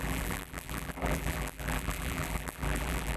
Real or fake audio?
fake